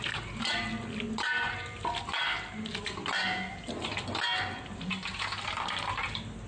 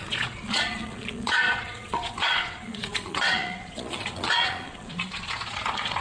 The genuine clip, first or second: first